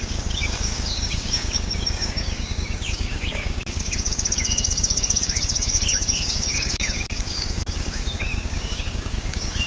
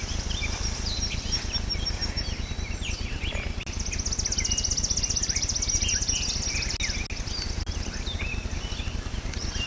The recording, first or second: second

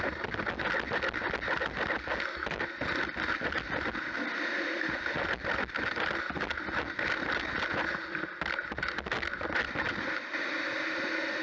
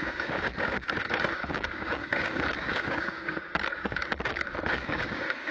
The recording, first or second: first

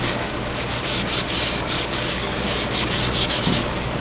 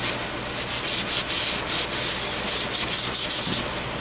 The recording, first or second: second